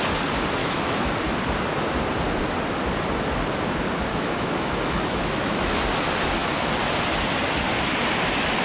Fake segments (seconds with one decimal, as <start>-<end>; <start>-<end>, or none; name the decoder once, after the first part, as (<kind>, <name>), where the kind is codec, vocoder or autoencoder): 0.6-1.1 (autoencoder, DAC-VAE); 4.1-5.7